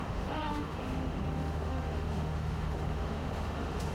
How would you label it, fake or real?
fake